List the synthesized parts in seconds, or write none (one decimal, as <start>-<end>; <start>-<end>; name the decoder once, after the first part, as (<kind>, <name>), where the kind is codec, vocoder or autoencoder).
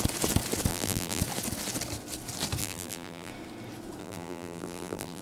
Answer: 0.7-1.2 (vocoder, BigVGAN v2); 2.6-3.3; 4.0-5.2